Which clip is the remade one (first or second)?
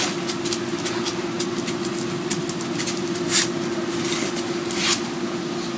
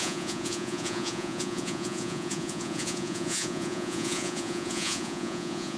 second